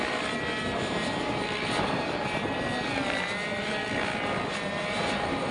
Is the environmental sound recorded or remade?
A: recorded